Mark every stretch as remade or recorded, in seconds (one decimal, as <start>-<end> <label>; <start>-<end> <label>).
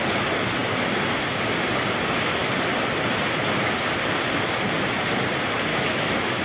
0.0-5.7 recorded; 5.7-6.4 remade